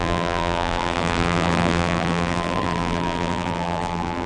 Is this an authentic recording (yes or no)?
no